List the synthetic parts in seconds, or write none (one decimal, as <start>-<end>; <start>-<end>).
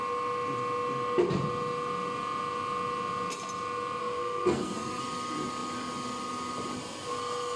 4.0-5.0